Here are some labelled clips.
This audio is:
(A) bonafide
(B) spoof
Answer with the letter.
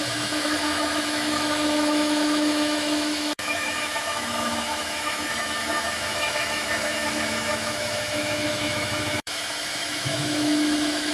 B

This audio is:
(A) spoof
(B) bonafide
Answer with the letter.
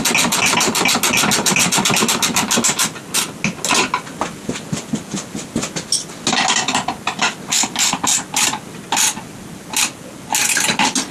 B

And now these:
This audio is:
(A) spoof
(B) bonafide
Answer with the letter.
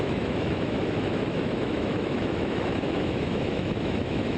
A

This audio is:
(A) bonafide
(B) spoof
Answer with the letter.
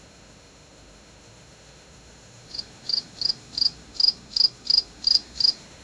B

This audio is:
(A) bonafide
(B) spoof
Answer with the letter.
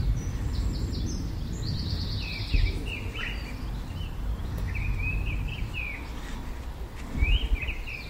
A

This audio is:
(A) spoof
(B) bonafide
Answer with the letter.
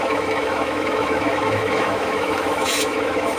A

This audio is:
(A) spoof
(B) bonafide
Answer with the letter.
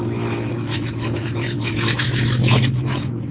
A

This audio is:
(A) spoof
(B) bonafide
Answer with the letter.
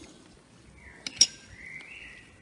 B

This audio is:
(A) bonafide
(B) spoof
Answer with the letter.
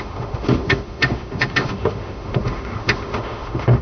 B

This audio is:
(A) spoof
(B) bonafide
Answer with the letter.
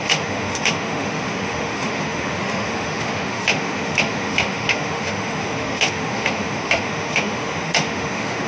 A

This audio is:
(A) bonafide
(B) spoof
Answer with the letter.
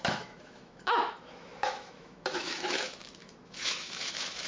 B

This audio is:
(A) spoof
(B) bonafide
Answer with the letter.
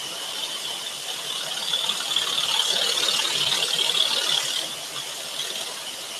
B